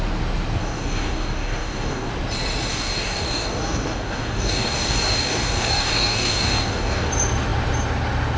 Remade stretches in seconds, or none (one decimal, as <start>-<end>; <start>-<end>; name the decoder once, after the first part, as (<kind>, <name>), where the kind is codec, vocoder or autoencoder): 0.6-2.1 (codec, DAC); 2.7-7.1